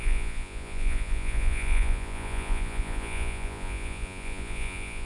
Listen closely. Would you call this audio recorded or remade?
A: remade